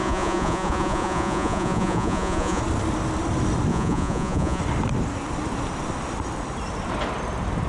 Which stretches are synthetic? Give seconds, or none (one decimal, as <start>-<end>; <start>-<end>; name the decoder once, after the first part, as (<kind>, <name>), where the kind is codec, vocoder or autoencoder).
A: 0.0-2.6 (vocoder, Vocos); 3.7-4.6